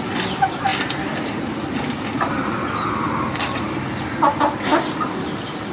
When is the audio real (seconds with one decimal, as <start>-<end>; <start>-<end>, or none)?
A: 0.0-5.7